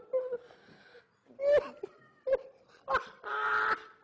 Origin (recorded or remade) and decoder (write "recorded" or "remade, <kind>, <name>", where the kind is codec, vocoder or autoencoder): recorded